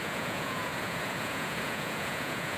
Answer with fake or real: fake